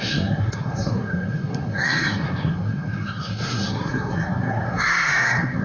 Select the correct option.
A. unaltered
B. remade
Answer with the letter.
B